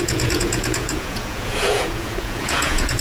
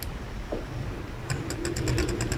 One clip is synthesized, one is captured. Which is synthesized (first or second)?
first